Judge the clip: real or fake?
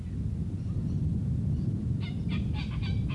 real